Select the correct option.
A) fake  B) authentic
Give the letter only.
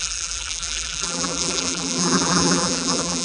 A